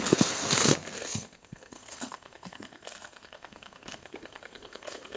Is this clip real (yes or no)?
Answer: no